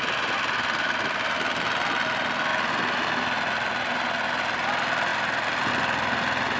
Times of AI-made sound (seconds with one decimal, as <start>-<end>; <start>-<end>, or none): none